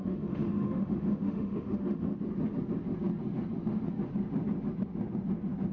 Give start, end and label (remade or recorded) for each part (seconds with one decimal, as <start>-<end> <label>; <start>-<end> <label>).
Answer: 0.0-2.1 remade; 2.1-5.7 recorded